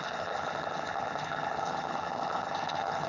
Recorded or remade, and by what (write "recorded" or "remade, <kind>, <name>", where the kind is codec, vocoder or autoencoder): remade, vocoder, HiFi-GAN